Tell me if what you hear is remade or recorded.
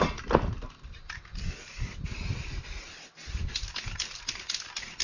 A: recorded